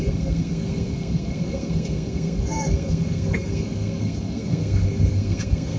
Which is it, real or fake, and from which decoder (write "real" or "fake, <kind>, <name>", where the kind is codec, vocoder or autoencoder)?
fake, codec, SNAC